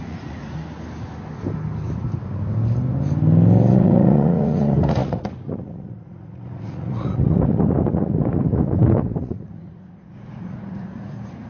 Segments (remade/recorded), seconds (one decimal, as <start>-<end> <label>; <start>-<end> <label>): 0.0-0.6 remade; 0.6-3.7 recorded; 3.7-11.5 remade